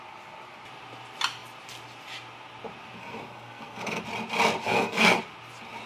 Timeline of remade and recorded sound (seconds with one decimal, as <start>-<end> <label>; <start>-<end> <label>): 0.0-3.0 recorded; 3.0-4.0 remade; 4.0-4.6 recorded; 4.6-5.2 remade; 5.2-5.9 recorded